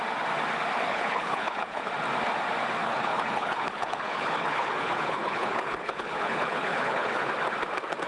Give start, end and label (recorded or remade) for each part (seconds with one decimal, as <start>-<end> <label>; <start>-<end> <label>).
0.0-0.9 recorded; 0.9-1.9 remade; 1.9-2.8 recorded; 2.8-7.3 remade; 7.3-8.1 recorded